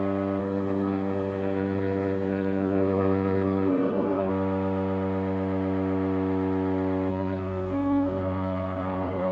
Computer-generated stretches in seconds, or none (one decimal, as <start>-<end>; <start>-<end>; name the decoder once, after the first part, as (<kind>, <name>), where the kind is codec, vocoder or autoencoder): 0.4-4.3 (codec, SNAC); 7.1-9.3